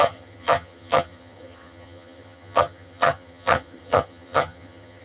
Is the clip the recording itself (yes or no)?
no